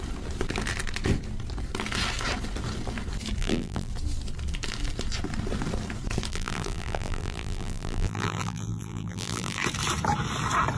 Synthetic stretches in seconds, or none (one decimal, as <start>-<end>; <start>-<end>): 3.4-3.9; 6.3-9.6